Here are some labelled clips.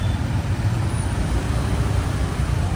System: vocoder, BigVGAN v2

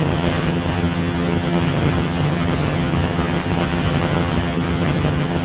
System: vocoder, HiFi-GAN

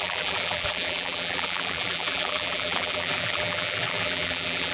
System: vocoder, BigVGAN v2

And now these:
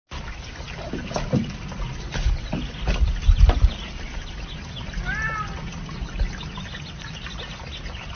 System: none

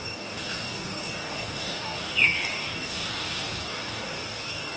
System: codec, DAC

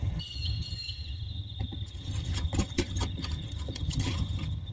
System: vocoder, HiFi-GAN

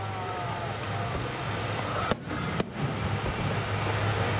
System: none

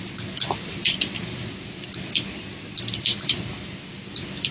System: vocoder, BigVGAN v2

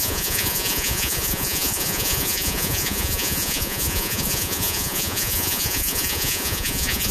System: vocoder, Vocos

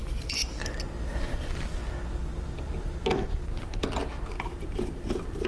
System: none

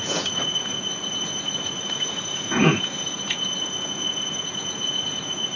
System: vocoder, Vocos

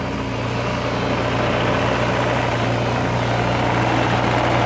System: none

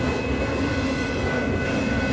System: none